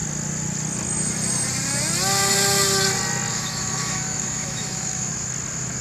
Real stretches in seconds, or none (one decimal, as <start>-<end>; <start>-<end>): 0.0-3.3; 5.1-5.8